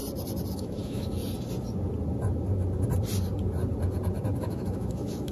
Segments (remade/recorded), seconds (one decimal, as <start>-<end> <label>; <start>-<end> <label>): 0.0-0.5 recorded; 0.5-1.2 remade; 1.2-4.4 recorded; 4.4-5.3 remade